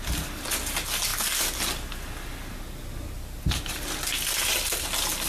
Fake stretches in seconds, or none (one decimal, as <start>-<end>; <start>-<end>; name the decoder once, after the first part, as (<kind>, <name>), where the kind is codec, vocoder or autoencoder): none